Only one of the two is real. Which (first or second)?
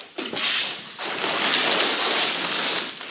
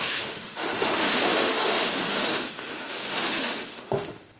first